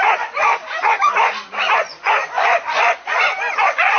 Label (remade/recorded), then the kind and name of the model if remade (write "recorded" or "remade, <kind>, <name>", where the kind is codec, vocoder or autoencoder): remade, vocoder, Vocos